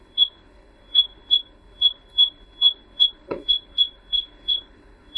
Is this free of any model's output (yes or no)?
no